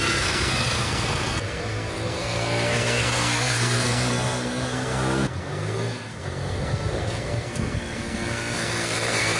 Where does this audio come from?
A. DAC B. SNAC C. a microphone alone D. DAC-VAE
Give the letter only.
B